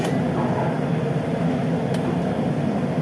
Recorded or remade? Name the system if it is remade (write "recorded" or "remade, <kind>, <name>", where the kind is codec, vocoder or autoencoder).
recorded